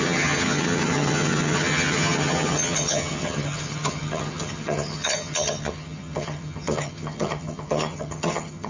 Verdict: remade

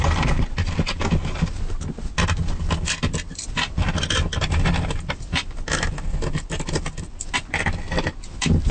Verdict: recorded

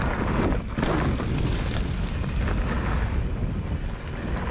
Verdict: recorded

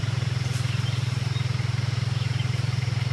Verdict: recorded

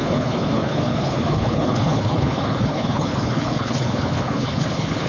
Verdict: remade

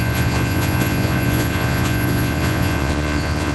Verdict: remade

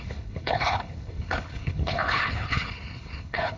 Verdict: remade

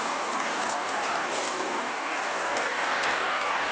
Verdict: remade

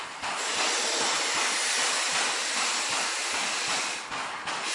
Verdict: recorded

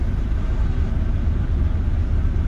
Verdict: recorded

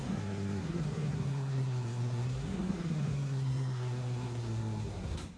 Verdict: remade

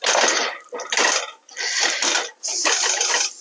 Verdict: recorded